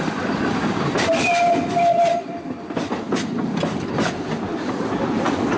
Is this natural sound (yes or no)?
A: yes